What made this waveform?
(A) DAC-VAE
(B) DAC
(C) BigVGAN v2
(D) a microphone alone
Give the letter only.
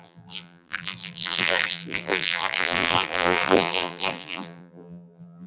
C